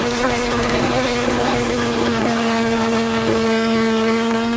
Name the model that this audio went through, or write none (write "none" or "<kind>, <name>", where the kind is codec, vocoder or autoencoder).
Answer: codec, SNAC